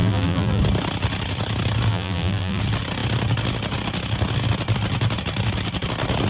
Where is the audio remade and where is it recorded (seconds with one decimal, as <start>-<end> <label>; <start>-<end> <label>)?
0.0-0.6 remade; 0.6-1.9 recorded; 1.9-2.6 remade; 2.6-6.3 recorded